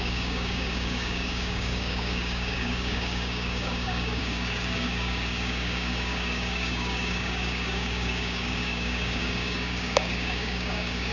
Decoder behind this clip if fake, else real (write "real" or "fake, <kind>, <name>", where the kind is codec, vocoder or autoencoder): fake, codec, DAC